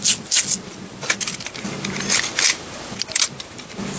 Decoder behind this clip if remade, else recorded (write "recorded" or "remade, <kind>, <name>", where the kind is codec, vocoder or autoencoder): recorded